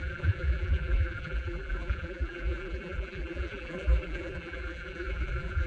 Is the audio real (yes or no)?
no